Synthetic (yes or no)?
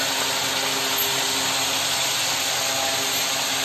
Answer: no